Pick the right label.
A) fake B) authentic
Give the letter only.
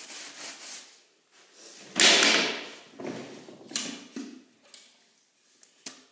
B